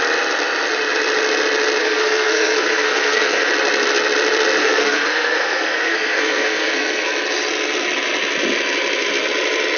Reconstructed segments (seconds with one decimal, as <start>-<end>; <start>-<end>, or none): 1.8-3.5; 4.6-7.1